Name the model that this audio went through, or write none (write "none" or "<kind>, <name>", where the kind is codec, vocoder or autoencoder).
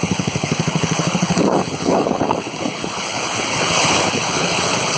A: codec, HILCodec